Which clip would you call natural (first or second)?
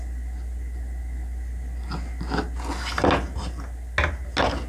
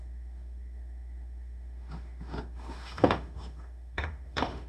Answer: first